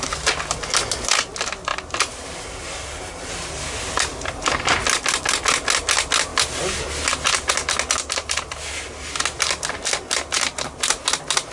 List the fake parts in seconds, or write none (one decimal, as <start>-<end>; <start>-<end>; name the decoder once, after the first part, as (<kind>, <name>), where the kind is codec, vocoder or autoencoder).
none